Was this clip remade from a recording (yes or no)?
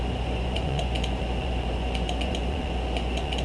yes